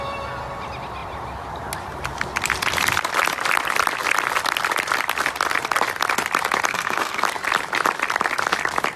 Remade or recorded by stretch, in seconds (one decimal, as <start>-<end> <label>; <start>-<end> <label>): 0.0-6.7 recorded; 6.7-7.2 remade; 7.2-9.0 recorded

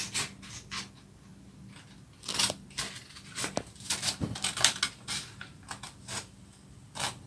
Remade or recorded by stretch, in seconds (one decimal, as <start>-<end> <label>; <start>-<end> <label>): 0.0-7.3 recorded

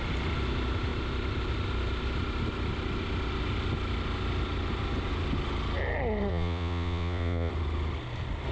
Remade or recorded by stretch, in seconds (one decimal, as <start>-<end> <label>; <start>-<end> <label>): 0.0-6.3 recorded; 6.3-7.5 remade; 7.5-8.5 recorded

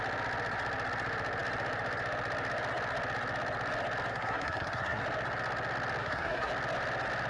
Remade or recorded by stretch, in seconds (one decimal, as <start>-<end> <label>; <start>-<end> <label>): 0.0-4.1 recorded; 4.1-5.0 remade; 5.0-6.0 recorded; 6.0-6.5 remade; 6.5-7.3 recorded

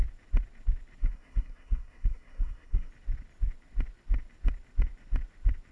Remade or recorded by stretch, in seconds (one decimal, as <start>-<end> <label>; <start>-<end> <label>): 0.0-1.0 recorded; 1.0-2.9 remade; 2.9-5.7 recorded

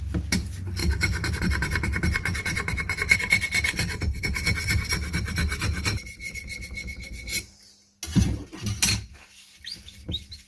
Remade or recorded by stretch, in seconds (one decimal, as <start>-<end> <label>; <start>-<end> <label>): 0.0-0.8 recorded; 0.8-1.4 remade; 1.4-10.5 recorded